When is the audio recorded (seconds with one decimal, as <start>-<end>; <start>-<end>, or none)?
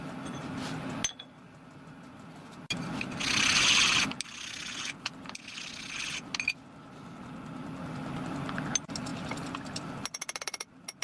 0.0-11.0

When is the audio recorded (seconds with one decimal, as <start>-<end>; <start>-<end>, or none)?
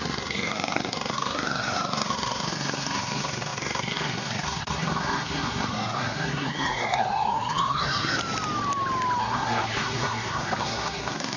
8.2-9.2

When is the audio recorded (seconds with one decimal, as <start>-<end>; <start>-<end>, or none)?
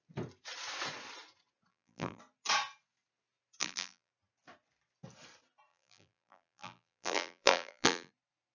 0.0-1.7; 2.2-3.6; 4.1-5.7; 8.1-8.5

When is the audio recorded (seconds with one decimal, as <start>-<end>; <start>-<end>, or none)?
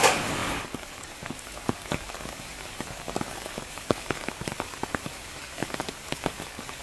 none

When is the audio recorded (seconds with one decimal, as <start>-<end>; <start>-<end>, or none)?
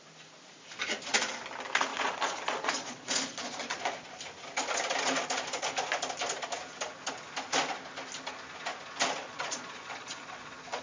0.0-1.9; 4.2-9.2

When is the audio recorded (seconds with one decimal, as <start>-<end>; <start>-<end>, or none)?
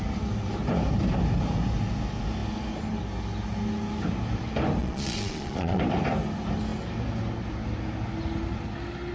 0.0-4.8; 5.8-9.1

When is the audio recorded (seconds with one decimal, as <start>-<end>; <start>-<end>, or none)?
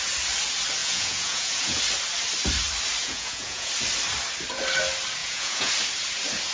0.0-0.8; 1.8-3.0; 3.7-5.2; 5.7-6.5